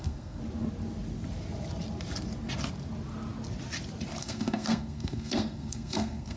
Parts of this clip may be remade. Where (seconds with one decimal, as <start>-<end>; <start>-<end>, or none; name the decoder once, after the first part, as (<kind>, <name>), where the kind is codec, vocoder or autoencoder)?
0.0-0.4 (codec, SNAC); 4.2-6.4